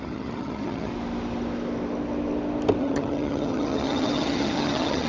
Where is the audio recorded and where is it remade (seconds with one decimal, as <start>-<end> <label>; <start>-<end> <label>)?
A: 0.0-0.9 remade; 0.9-2.8 recorded; 2.8-5.1 remade